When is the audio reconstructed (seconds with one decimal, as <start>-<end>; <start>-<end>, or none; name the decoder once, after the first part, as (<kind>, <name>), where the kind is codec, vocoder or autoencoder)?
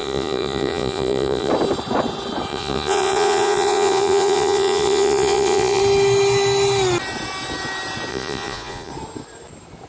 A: 0.0-1.5 (vocoder, Vocos); 2.5-5.8; 8.1-8.9